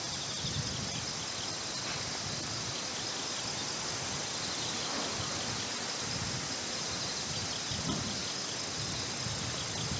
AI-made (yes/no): no